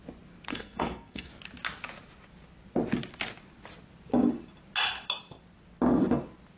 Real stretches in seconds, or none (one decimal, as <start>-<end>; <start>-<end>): 0.0-0.5; 1.3-6.6